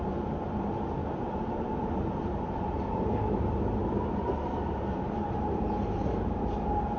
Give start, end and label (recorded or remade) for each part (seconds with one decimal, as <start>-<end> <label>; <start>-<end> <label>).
0.0-1.0 recorded; 1.0-2.7 remade; 2.7-3.8 recorded; 3.8-6.4 remade; 6.4-7.0 recorded